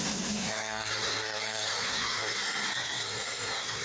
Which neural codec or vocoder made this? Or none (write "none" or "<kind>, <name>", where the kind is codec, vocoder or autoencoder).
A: codec, SNAC